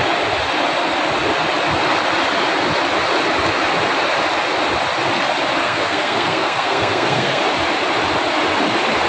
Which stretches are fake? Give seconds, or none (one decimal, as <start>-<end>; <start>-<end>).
5.6-7.4

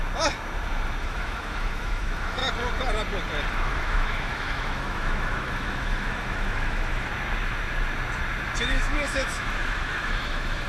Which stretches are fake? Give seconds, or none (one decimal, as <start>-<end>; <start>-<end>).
1.0-2.4; 3.5-7.1; 8.6-10.7

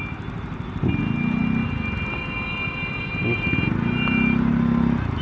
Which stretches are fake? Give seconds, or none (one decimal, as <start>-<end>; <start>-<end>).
none

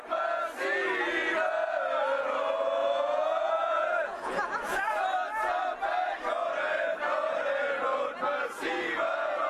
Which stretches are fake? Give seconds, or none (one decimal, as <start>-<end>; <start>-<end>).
2.8-4.9

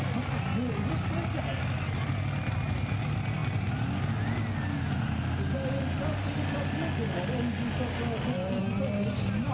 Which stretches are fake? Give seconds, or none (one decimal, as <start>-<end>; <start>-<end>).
none

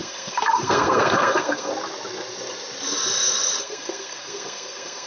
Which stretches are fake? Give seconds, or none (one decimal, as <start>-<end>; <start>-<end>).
0.0-1.7; 3.6-5.1